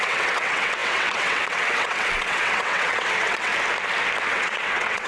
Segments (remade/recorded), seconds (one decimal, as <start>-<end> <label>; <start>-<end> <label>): 0.0-3.5 remade; 3.5-4.2 recorded; 4.2-5.1 remade